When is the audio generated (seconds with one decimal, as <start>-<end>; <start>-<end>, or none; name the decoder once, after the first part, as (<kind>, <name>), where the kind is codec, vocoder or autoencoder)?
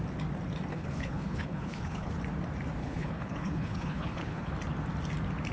0.7-2.1 (codec, HILCodec); 2.8-4.5